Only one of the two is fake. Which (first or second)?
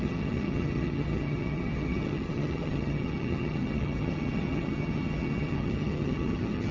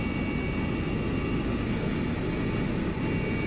first